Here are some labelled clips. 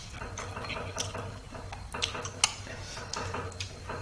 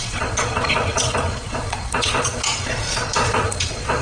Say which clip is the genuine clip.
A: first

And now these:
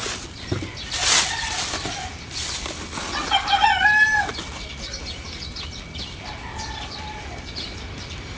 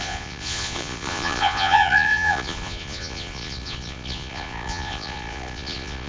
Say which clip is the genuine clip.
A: first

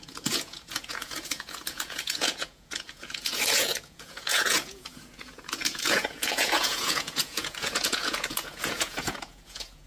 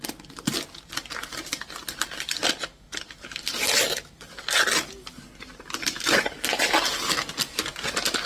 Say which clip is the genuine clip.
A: second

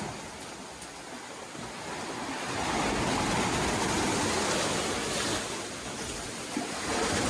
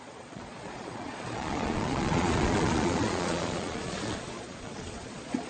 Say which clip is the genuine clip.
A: first